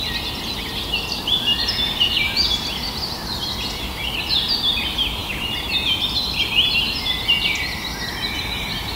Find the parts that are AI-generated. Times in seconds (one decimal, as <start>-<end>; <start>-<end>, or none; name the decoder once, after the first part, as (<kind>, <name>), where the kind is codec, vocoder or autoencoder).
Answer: 1.6-2.5 (vocoder, BigVGAN v2)